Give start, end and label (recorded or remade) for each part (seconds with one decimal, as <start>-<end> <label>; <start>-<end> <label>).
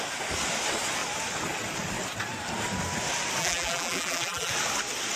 0.0-3.4 recorded; 3.4-4.5 remade; 4.5-5.2 recorded